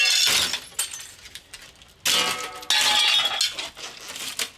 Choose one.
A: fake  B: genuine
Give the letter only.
B